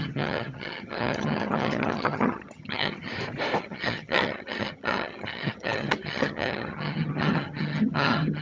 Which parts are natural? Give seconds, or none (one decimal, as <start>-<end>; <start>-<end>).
3.1-3.6